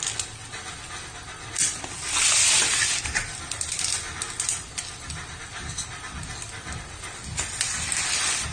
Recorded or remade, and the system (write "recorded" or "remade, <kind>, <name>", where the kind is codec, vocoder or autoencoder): recorded